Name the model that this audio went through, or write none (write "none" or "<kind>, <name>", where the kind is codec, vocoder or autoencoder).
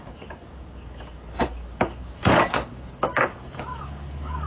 codec, DAC